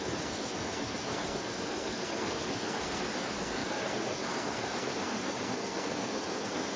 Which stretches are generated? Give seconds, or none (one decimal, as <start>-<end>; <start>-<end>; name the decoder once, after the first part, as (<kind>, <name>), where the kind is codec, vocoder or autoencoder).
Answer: 0.0-6.8 (codec, SNAC)